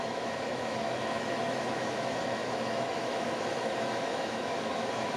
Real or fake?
fake